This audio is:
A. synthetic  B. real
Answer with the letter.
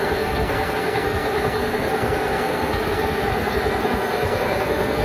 A